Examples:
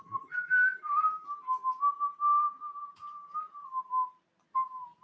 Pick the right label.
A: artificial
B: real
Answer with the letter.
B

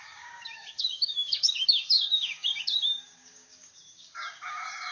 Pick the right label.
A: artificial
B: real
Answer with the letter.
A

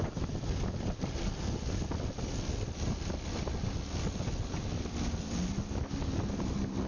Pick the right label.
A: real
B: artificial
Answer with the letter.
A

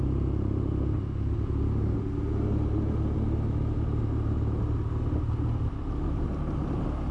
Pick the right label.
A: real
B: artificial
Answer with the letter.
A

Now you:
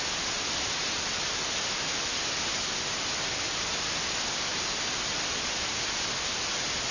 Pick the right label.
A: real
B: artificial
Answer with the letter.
A